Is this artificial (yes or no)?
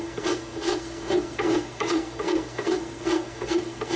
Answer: yes